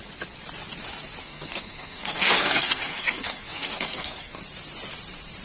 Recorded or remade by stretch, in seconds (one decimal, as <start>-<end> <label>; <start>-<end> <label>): 0.0-1.2 recorded; 1.2-4.4 remade; 4.4-5.4 recorded